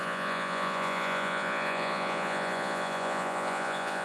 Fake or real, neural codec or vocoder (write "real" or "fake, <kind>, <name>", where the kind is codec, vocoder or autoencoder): fake, vocoder, Vocos